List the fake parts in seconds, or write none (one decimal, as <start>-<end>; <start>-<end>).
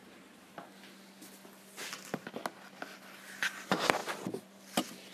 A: 4.0-5.1